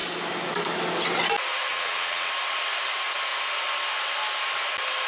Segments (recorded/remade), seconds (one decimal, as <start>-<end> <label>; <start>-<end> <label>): 0.0-1.7 recorded; 1.7-2.3 remade; 2.3-5.1 recorded